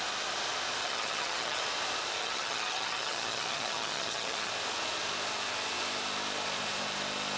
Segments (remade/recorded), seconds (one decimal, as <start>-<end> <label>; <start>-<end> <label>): 0.0-0.8 recorded; 0.8-1.6 remade; 1.6-2.2 recorded; 2.2-4.5 remade; 4.5-7.4 recorded